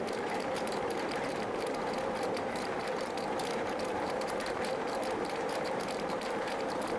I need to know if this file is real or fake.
fake